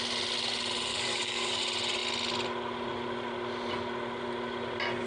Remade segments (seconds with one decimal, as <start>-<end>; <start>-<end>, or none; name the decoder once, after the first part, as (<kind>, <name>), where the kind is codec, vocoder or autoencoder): 0.9-1.6 (codec, DAC)